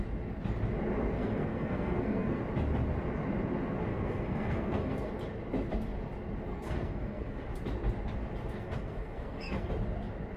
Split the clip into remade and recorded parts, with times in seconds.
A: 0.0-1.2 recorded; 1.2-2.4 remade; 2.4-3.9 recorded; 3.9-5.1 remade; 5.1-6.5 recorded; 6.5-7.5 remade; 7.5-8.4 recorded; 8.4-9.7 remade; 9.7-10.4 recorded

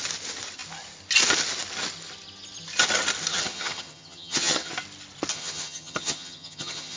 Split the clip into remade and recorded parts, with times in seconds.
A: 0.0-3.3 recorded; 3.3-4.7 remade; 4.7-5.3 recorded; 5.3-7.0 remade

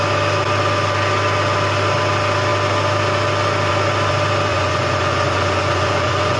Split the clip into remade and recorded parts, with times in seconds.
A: 0.0-4.5 recorded; 4.5-6.4 remade

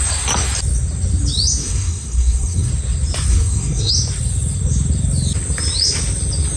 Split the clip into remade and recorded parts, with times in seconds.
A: 0.0-1.6 recorded; 1.6-2.7 remade; 2.7-3.3 recorded; 3.3-3.9 remade; 3.9-6.6 recorded

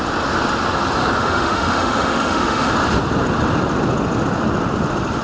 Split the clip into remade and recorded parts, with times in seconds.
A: 0.0-1.2 recorded; 1.2-2.7 remade; 2.7-5.2 recorded

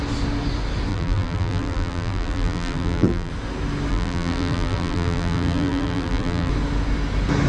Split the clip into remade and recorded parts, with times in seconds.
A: 0.0-0.9 recorded; 0.9-3.3 remade; 3.3-3.9 recorded; 3.9-6.5 remade; 6.5-7.5 recorded

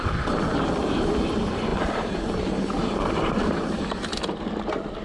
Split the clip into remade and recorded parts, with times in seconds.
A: 0.0-1.7 recorded; 1.7-4.4 remade; 4.4-5.0 recorded

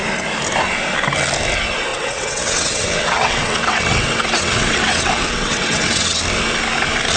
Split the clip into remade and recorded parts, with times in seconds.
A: 0.0-1.9 recorded; 1.9-6.2 remade; 6.2-7.2 recorded